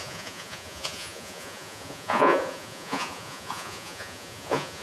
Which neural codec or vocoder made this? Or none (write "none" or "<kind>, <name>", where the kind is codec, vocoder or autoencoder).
vocoder, Vocos